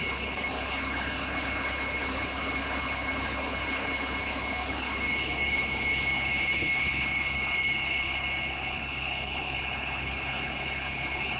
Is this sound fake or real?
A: fake